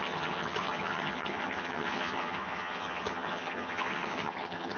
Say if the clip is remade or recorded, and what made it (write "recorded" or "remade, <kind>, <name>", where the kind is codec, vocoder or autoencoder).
remade, vocoder, HiFi-GAN